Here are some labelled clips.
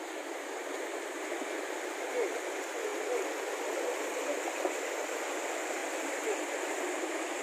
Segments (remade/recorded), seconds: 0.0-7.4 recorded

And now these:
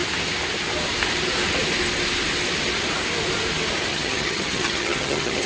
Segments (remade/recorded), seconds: 0.0-3.9 recorded; 3.9-5.5 remade

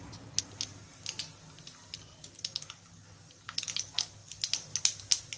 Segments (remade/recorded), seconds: 0.0-5.4 recorded

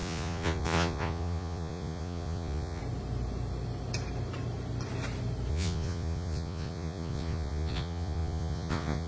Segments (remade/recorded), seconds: 0.0-2.8 remade; 2.8-5.5 recorded; 5.5-9.1 remade

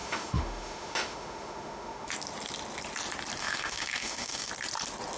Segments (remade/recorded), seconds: 0.0-2.1 remade; 2.1-3.4 recorded; 3.4-4.5 remade; 4.5-5.2 recorded